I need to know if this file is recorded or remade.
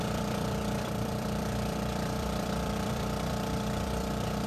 remade